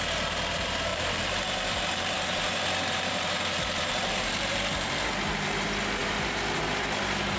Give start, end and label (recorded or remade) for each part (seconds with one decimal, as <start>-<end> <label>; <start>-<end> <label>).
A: 0.0-0.9 recorded; 0.9-5.1 remade; 5.1-7.4 recorded